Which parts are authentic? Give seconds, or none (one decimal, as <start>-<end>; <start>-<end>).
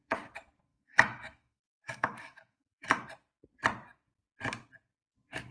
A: 0.0-0.7; 3.1-5.5